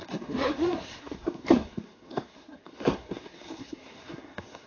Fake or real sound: fake